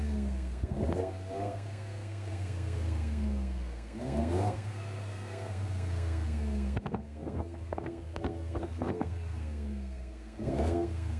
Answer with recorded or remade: remade